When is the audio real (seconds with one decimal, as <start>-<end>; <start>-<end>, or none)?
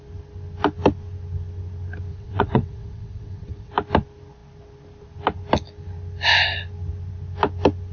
0.0-2.1; 3.7-7.9